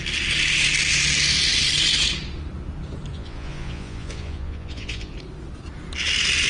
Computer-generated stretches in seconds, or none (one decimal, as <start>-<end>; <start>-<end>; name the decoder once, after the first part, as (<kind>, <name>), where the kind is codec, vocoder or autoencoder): 3.1-5.1 (vocoder, Vocos)